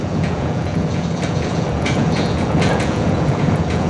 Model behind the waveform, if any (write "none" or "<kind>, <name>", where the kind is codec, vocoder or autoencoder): vocoder, Vocos